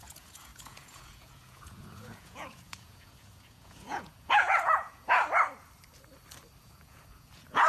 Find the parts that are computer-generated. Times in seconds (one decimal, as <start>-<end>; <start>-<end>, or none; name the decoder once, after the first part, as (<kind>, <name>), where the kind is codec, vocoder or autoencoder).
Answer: 0.0-5.2 (vocoder, Vocos); 6.6-7.7